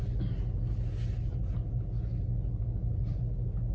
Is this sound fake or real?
real